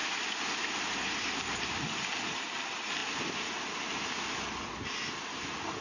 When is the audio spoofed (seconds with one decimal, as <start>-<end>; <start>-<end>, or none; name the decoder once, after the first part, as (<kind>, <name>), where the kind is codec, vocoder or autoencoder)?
none